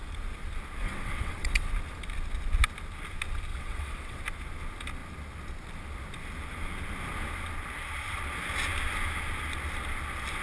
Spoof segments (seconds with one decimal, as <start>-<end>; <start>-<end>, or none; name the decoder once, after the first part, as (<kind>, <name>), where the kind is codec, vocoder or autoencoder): 0.8-1.7 (vocoder, WaveNeXt); 3.5-4.2